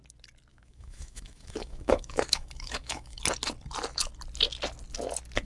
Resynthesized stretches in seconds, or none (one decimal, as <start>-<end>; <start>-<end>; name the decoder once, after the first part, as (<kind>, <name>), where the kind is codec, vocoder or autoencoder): 0.5-3.2 (autoencoder, DAC-VAE)